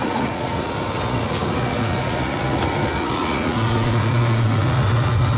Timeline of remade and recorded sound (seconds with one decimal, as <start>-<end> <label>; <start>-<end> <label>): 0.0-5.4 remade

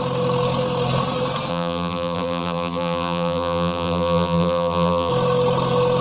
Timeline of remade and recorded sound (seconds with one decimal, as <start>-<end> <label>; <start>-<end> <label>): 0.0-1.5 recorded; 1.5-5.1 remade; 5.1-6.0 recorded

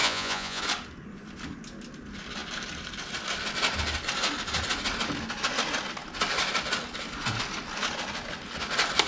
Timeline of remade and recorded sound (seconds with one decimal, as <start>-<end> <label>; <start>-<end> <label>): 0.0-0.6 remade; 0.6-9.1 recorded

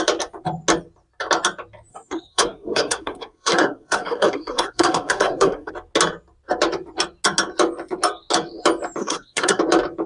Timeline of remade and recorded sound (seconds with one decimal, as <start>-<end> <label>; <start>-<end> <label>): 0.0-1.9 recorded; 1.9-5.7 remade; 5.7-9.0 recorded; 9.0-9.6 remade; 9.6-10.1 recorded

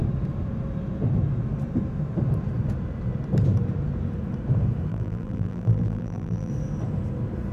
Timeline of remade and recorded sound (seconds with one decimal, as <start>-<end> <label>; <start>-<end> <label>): 0.0-4.9 recorded; 4.9-6.5 remade; 6.5-7.5 recorded

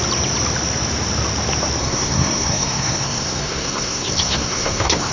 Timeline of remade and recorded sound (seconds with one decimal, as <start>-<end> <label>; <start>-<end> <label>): 0.0-1.8 recorded; 1.8-5.1 remade

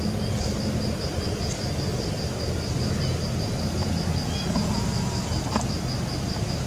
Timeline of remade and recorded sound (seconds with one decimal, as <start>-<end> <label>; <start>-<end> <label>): 0.0-6.7 recorded